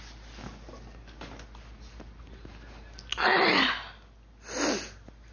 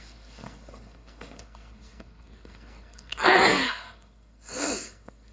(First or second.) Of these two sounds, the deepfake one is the second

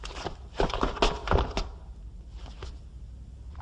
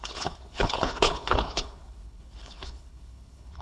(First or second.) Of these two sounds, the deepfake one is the second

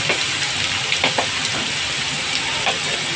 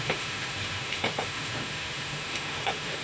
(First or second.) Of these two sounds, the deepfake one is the second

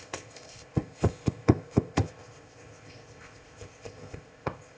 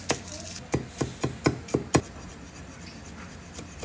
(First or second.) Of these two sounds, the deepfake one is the first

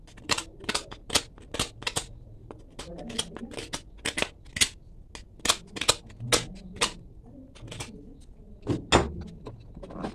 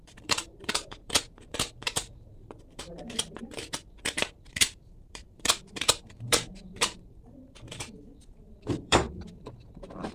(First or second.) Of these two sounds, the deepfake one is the second